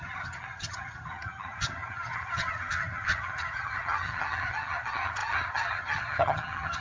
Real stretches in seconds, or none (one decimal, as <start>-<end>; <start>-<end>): none

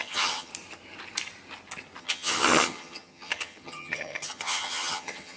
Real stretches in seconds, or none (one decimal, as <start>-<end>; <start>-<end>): 0.5-2.0